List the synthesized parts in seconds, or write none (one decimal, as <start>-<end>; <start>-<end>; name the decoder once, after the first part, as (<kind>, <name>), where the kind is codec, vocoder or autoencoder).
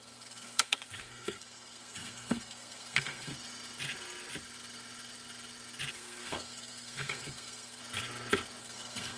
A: 0.0-3.3 (codec, SNAC); 5.9-7.8; 8.6-9.2